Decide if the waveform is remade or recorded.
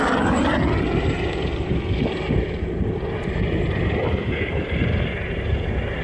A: recorded